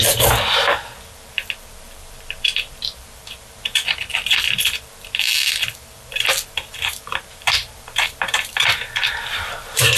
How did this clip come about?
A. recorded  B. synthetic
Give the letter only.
B